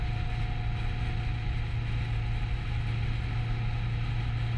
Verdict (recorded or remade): recorded